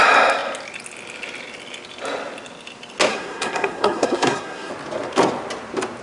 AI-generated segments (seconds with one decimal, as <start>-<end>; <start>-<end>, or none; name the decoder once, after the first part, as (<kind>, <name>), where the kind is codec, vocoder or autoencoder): 3.1-4.7 (codec, SNAC)